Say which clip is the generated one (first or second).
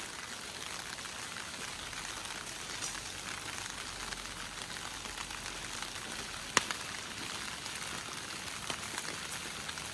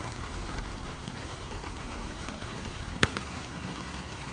second